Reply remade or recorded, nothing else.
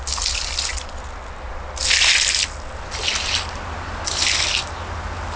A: recorded